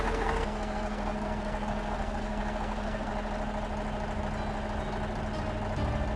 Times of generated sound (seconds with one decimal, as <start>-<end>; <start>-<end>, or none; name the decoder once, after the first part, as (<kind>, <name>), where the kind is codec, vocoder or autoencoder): 0.0-3.1 (codec, SNAC)